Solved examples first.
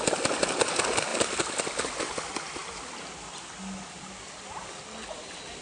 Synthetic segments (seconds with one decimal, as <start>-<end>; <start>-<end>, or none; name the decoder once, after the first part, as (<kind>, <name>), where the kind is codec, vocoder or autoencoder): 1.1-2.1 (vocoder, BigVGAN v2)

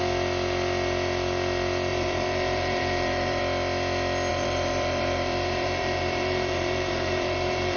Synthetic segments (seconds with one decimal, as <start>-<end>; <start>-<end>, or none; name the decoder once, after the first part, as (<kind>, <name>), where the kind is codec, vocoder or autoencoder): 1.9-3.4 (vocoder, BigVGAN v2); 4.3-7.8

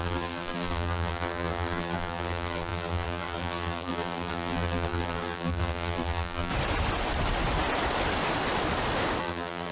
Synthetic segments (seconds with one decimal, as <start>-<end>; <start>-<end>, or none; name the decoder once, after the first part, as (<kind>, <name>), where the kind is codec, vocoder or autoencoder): 0.0-6.5 (vocoder, BigVGAN v2); 9.2-9.7

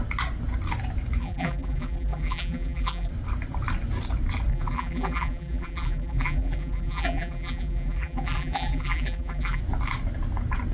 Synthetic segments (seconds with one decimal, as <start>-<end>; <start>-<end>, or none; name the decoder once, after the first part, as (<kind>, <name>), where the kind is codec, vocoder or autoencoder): 1.2-3.1 (vocoder, BigVGAN v2); 4.5-9.6